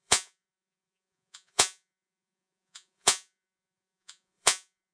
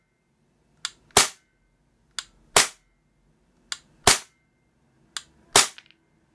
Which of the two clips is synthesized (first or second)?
first